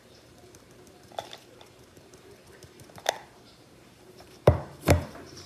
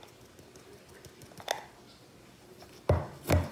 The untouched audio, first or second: second